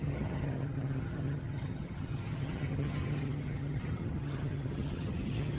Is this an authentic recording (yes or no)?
no